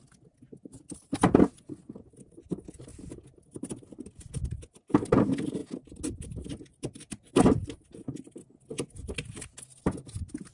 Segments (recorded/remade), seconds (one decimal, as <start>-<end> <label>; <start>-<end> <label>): 0.0-10.5 recorded